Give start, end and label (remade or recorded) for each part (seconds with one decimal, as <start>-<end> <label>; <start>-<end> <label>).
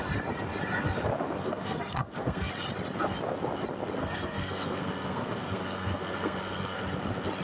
0.0-1.4 recorded; 1.4-2.5 remade; 2.5-4.0 recorded; 4.0-6.8 remade; 6.8-7.4 recorded